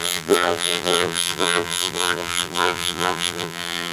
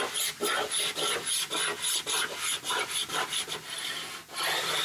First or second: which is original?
second